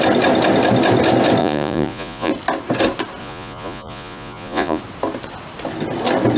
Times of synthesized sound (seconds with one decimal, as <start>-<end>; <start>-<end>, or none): 1.4-2.3; 3.2-4.8